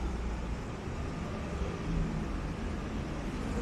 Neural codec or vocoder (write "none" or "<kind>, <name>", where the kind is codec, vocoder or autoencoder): none